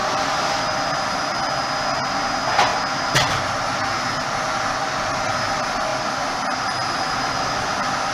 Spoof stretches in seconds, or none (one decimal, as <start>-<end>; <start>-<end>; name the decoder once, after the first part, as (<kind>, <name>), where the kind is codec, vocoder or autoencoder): 0.0-1.5 (vocoder, BigVGAN v2); 2.7-3.5; 5.9-7.6